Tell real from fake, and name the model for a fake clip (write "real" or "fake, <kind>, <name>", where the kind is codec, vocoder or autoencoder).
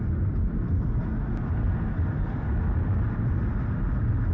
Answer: real